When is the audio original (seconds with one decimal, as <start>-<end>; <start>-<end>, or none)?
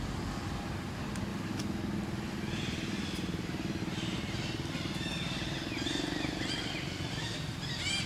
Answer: 0.0-8.1